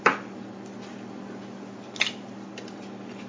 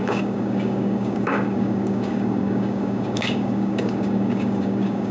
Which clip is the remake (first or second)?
second